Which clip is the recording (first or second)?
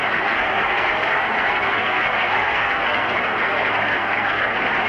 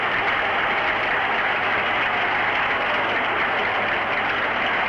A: second